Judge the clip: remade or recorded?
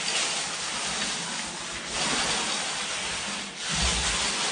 recorded